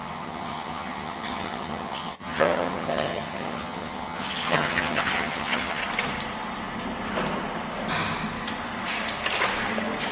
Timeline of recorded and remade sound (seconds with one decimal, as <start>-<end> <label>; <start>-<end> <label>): 0.0-5.8 remade; 5.8-10.1 recorded